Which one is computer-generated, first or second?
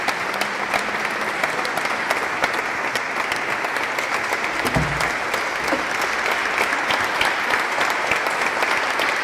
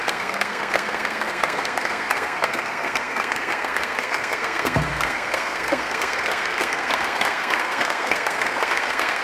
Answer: second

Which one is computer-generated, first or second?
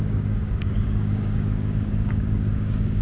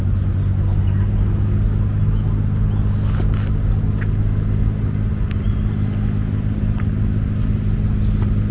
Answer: first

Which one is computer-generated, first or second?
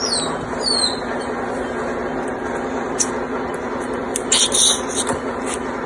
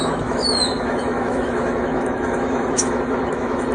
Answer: second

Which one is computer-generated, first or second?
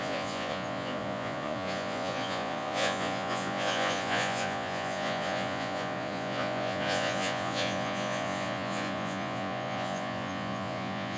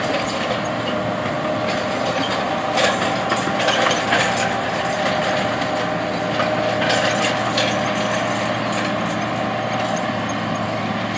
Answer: first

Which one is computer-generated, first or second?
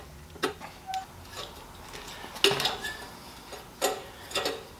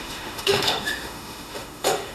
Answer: second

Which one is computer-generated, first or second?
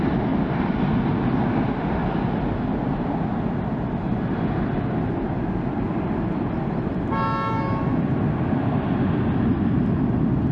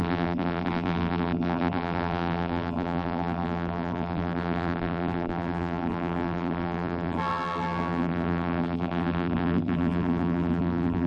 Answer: second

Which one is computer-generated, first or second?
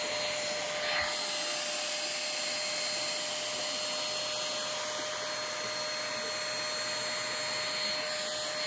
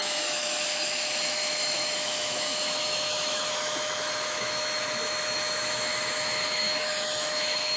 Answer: second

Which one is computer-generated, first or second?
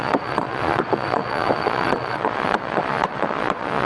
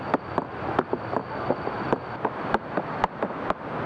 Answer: first